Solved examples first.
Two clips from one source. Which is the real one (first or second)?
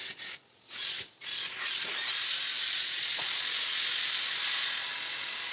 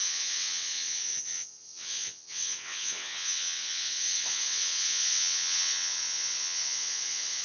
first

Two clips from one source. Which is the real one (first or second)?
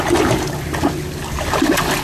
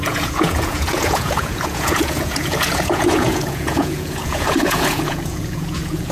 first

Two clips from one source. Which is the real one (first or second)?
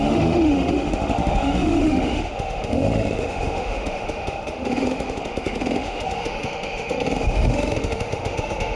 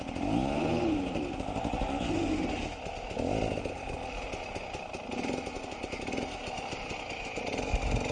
second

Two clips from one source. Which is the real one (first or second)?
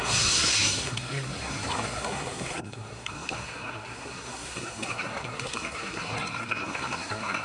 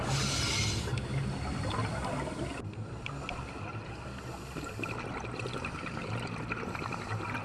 second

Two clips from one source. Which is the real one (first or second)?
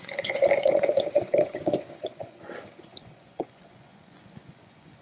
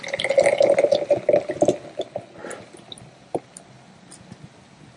second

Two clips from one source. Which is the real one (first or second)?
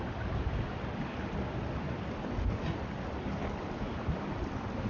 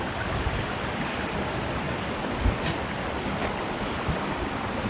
first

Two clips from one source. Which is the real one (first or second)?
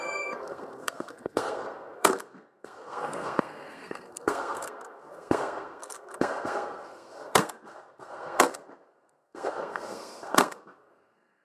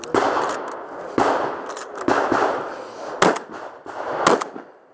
second